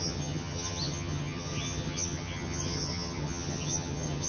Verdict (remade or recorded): remade